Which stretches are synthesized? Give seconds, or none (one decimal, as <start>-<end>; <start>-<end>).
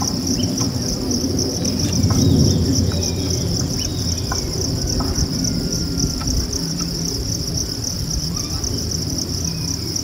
0.0-10.0